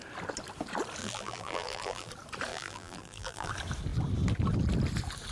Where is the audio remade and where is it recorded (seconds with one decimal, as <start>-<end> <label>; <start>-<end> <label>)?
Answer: 0.0-1.0 recorded; 1.0-2.1 remade; 2.1-2.5 recorded; 2.5-3.5 remade; 3.5-5.3 recorded